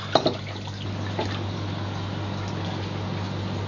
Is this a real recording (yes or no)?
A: yes